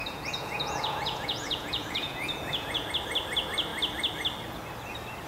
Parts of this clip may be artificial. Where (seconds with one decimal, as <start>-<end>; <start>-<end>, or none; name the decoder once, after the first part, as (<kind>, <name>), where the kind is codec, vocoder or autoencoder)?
0.0-2.9 (vocoder, Vocos)